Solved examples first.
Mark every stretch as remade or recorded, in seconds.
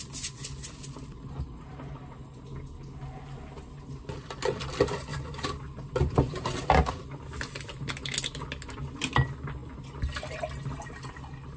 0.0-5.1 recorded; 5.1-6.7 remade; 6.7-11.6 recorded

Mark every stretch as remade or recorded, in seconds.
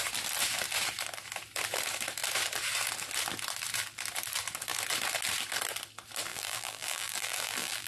0.0-6.3 recorded; 6.3-7.9 remade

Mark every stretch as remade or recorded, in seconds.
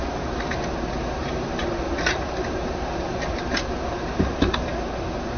0.0-1.2 recorded; 1.2-4.4 remade; 4.4-5.4 recorded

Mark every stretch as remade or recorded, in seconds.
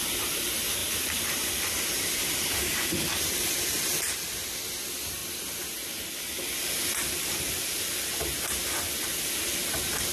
0.0-0.8 recorded; 0.8-2.6 remade; 2.6-10.1 recorded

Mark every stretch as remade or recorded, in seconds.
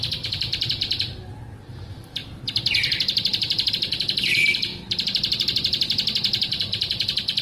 0.0-2.2 recorded; 2.2-3.7 remade; 3.7-4.7 recorded; 4.7-7.4 remade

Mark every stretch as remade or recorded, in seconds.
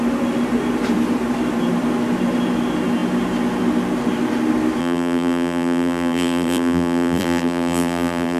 0.0-4.8 recorded; 4.8-8.4 remade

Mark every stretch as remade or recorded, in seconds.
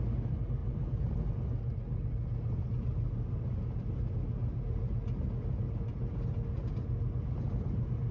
0.0-8.1 recorded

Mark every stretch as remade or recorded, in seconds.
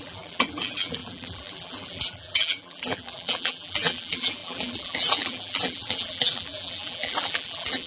0.0-7.9 remade